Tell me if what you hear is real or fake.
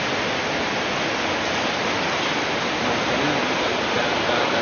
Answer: real